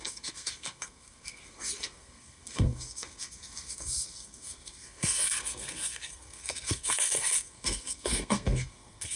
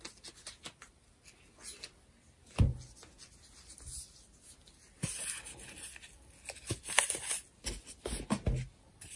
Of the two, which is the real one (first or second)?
second